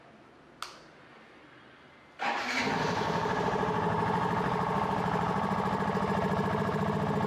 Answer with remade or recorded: recorded